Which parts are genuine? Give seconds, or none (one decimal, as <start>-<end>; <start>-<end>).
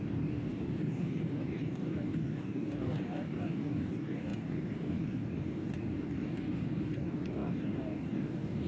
none